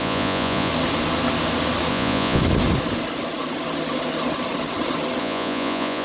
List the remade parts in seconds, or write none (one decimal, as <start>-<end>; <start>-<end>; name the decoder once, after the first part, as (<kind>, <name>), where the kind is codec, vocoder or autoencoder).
0.0-0.7 (vocoder, Vocos); 1.9-2.4; 5.2-6.0